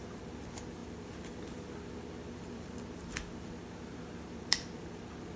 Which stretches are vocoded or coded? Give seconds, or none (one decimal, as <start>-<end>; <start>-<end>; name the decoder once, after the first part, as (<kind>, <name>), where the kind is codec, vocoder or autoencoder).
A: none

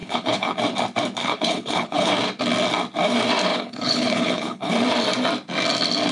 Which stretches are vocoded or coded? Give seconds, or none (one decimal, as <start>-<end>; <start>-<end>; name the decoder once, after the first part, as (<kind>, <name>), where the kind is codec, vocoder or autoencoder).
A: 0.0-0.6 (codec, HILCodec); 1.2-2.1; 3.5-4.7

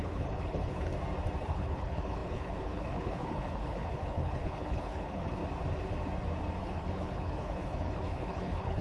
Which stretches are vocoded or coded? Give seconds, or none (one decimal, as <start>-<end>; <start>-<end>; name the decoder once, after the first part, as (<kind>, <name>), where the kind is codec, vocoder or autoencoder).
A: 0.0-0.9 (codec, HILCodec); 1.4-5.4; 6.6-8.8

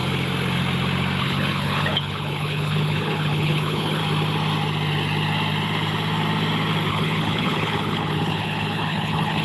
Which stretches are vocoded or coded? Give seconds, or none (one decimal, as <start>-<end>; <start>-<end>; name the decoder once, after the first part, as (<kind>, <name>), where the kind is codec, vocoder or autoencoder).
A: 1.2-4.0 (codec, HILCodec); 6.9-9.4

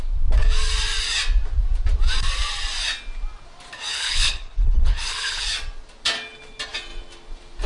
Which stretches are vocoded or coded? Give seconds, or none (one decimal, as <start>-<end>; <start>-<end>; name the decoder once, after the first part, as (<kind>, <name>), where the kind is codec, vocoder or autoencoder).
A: 3.9-5.4 (codec, HILCodec)